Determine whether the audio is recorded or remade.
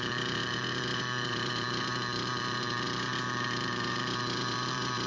remade